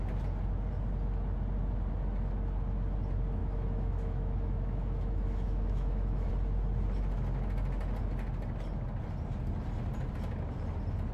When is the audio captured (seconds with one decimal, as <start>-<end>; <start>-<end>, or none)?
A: 0.0-3.4; 6.3-11.1